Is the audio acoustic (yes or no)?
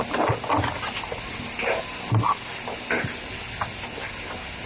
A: yes